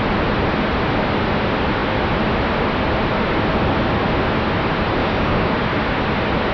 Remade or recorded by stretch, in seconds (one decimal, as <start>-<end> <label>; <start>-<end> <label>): 0.0-5.0 recorded; 5.0-5.5 remade; 5.5-6.5 recorded